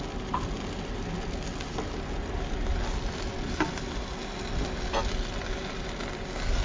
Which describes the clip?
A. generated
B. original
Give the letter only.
B